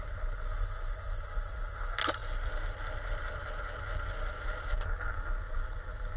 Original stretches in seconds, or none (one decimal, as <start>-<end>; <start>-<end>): 0.0-6.2

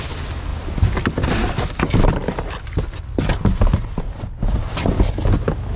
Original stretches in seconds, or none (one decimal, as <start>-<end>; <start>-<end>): 0.0-5.8

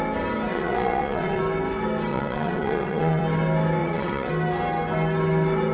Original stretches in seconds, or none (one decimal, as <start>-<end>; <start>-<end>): 0.0-0.5; 1.4-2.1; 3.2-3.8; 4.3-5.7

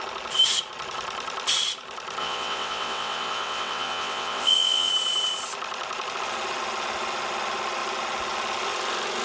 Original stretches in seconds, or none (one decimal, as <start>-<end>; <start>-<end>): 0.0-2.2; 4.9-9.2

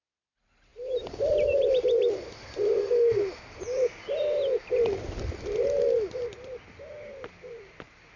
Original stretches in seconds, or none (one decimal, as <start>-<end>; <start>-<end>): 0.0-8.2

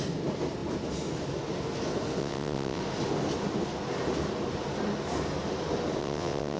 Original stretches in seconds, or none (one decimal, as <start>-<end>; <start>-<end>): 0.0-2.2; 2.8-6.0

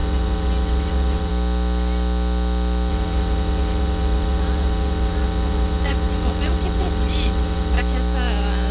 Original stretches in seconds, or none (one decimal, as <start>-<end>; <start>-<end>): 1.3-2.9; 7.8-8.7